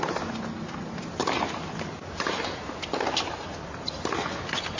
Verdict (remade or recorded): recorded